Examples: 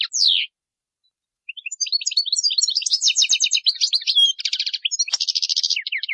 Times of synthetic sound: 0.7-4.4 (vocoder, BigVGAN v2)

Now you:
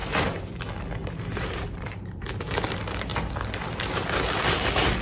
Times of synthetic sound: 0.0-0.6 (vocoder, BigVGAN v2); 1.0-2.3

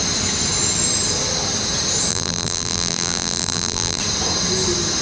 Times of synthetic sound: 2.1-4.0 (vocoder, BigVGAN v2)

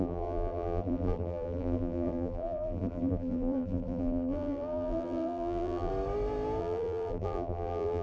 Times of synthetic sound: 0.0-5.9 (vocoder, BigVGAN v2); 6.6-8.0